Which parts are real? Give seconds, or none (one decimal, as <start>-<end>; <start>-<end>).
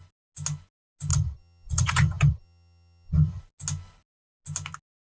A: 0.0-1.1; 3.4-5.2